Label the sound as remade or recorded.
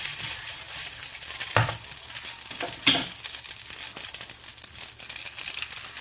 recorded